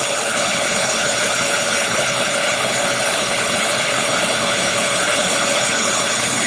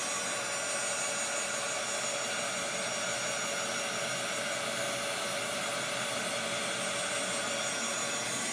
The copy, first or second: first